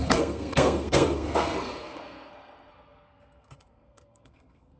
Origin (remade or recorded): remade